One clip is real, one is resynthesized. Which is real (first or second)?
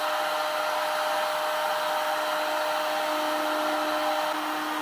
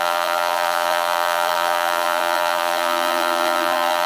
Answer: first